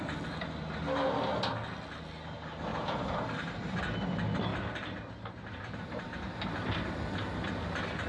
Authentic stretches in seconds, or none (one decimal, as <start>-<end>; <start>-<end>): 0.0-2.7; 3.8-4.5; 6.7-8.1